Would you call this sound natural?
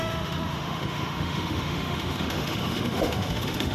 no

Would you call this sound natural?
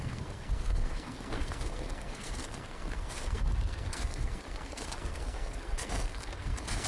no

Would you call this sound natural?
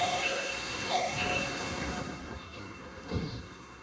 no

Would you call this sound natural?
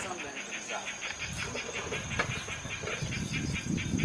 yes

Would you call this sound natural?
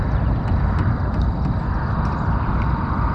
yes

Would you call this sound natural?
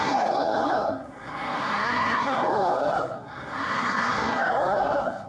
no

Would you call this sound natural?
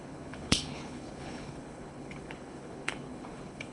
no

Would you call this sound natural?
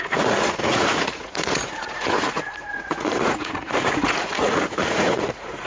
no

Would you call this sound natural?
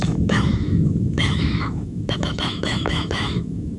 no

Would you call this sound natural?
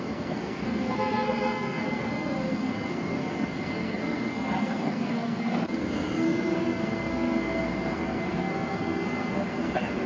no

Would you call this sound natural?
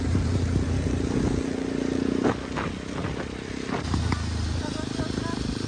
yes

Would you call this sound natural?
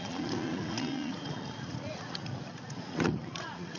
no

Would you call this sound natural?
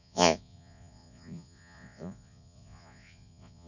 no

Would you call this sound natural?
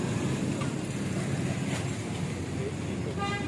yes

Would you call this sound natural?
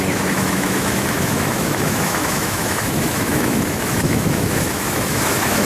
no